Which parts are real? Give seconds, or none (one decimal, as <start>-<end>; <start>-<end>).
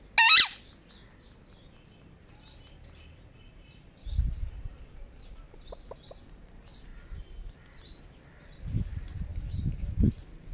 0.0-3.3; 6.5-6.9; 7.7-9.3; 9.9-10.5